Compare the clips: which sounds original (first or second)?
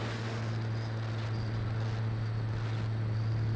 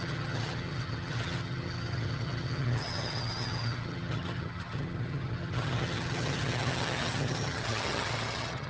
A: first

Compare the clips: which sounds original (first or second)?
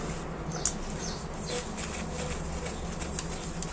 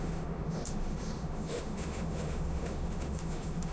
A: first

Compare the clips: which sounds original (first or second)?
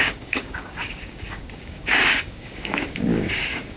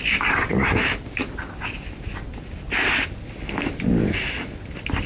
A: second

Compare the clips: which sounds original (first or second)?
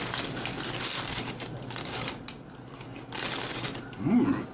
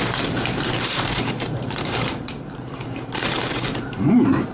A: first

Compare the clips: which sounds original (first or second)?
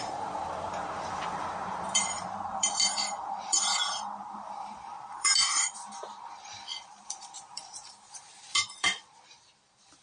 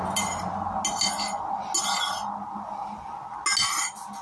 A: second